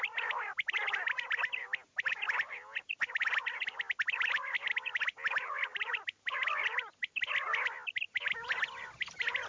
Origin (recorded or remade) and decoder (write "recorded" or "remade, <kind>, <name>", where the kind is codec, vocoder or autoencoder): recorded